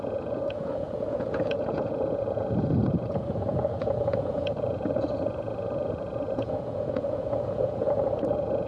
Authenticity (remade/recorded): remade